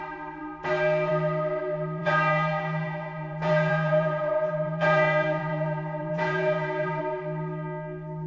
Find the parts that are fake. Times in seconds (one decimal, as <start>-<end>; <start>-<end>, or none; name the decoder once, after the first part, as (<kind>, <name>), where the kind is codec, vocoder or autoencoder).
2.0-7.0 (vocoder, Vocos)